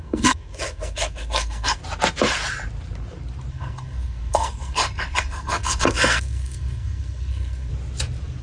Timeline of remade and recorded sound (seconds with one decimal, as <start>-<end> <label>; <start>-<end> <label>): 0.0-1.8 remade; 1.8-3.5 recorded; 3.5-7.7 remade; 7.7-8.4 recorded